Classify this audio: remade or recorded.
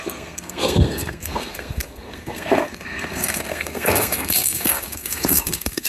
remade